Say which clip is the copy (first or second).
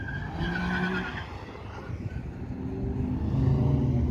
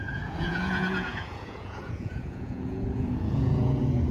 second